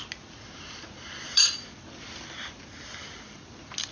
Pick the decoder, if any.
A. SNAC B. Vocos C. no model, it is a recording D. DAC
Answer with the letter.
C